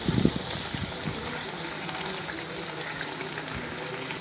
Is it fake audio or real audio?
real